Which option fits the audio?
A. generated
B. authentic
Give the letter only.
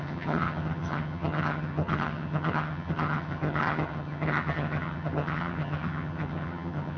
A